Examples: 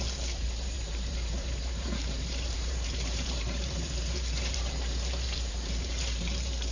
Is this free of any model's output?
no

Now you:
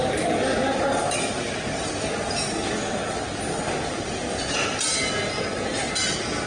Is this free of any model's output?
yes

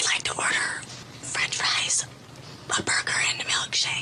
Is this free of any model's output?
yes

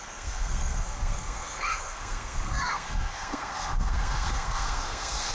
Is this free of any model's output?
no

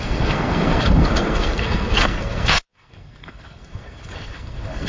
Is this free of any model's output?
no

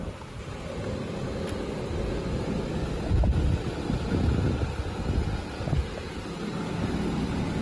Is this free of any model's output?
yes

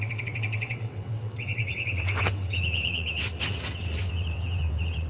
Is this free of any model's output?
no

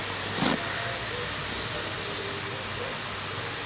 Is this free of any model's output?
yes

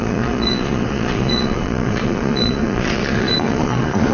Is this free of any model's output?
no